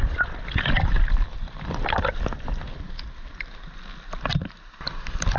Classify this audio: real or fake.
real